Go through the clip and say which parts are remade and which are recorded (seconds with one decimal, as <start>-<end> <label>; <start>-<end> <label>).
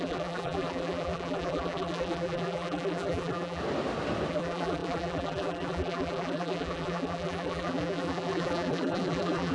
0.0-3.6 remade; 3.6-4.3 recorded; 4.3-9.5 remade